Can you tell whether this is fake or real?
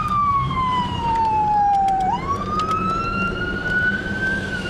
fake